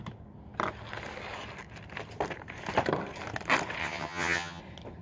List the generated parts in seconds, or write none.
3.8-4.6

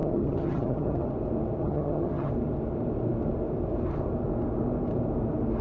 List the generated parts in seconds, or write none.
0.0-1.1; 1.6-2.3

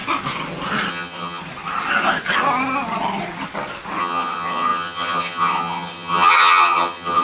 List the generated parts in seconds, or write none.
0.9-1.4; 4.0-7.2